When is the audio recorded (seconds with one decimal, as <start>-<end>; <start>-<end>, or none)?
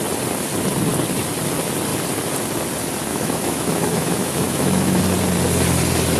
0.0-3.1; 5.0-6.2